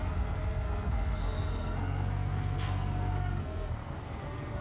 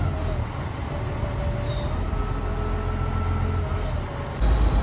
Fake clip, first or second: first